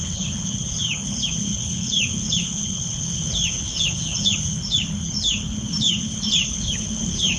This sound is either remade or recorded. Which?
remade